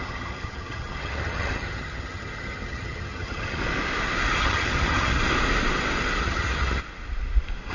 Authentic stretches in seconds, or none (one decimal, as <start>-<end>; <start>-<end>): 3.6-4.4; 5.2-6.2; 6.8-7.7